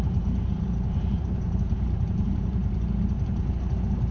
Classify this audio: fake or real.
fake